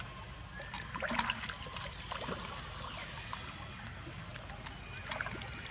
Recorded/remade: recorded